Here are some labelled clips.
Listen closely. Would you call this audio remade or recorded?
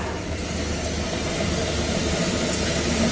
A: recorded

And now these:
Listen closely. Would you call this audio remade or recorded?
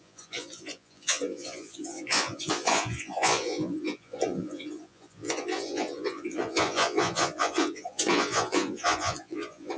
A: remade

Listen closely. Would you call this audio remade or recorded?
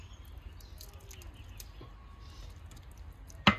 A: recorded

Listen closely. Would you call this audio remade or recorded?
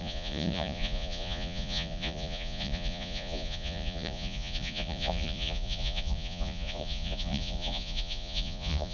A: remade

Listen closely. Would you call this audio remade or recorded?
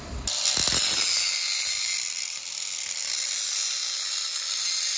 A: recorded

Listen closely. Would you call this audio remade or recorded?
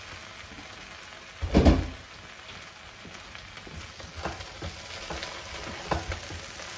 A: recorded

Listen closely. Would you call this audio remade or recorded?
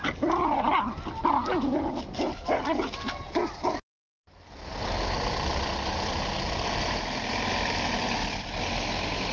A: recorded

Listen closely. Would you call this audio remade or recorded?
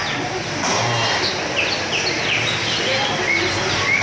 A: recorded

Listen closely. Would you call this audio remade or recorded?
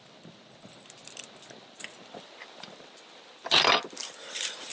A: recorded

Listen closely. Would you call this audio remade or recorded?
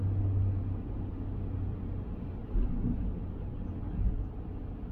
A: recorded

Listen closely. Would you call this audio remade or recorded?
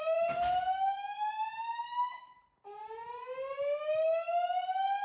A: recorded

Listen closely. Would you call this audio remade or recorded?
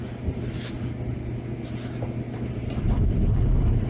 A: recorded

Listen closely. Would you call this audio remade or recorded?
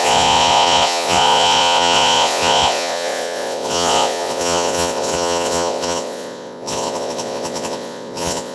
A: remade